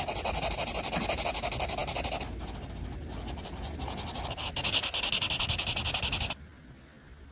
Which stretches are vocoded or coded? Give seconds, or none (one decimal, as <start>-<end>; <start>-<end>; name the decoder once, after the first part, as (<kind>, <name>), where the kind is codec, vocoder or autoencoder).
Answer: none